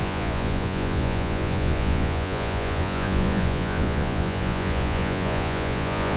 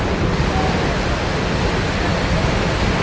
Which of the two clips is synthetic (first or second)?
first